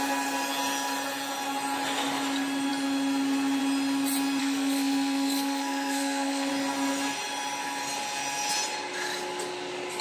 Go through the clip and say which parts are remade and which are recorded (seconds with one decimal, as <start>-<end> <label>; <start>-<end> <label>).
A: 0.0-4.4 recorded; 4.4-6.5 remade; 6.5-10.0 recorded